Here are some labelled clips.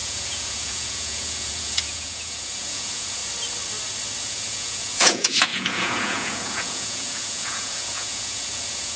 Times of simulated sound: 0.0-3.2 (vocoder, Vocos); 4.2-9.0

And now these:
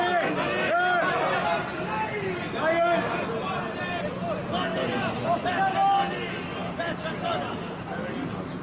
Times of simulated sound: none

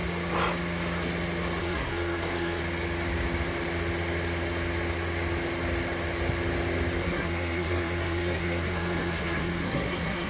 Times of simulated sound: 1.6-2.6 (codec, SNAC); 7.0-10.3

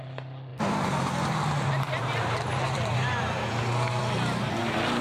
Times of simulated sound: 0.5-3.5 (vocoder, BigVGAN v2)

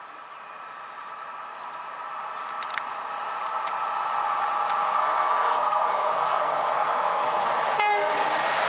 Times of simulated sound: 4.9-7.5 (codec, SNAC)

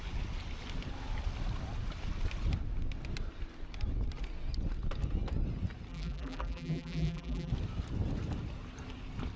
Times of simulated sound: 5.9-7.5 (vocoder, BigVGAN v2)

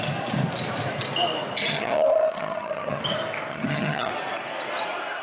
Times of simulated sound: 1.6-3.0 (vocoder, HiFi-GAN); 3.5-4.1